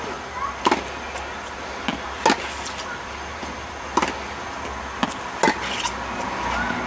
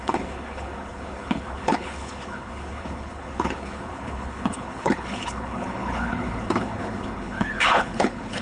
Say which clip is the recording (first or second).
first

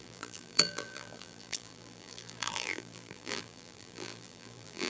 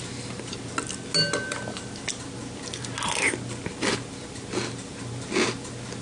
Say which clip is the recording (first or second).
second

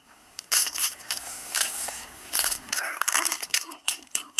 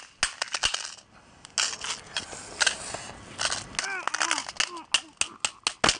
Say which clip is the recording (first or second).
second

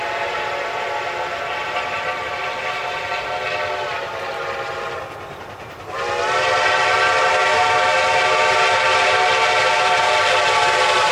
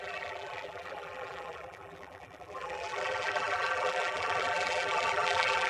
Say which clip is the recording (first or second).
first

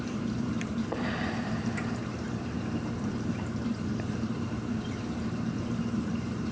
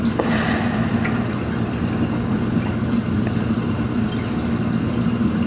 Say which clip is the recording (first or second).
second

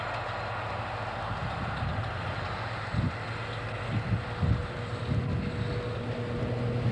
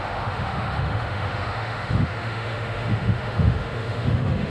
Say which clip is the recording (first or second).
first